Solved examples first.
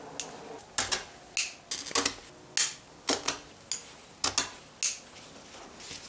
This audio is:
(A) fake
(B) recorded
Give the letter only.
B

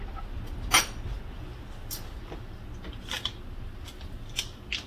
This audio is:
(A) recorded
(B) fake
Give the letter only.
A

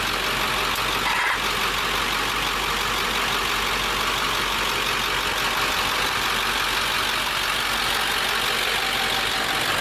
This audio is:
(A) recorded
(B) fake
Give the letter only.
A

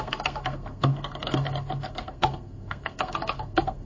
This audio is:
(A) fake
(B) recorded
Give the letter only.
A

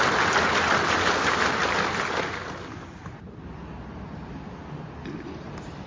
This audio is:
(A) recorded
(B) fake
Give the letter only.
A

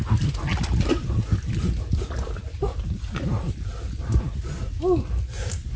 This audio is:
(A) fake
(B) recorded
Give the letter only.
B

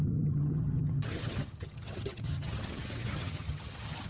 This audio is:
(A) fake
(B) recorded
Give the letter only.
A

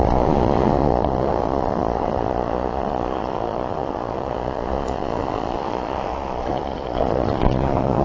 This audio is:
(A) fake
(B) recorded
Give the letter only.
A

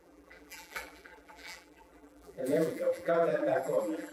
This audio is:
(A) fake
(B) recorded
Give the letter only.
A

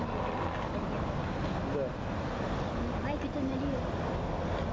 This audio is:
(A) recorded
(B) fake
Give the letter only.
A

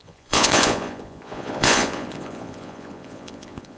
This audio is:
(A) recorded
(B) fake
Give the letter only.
B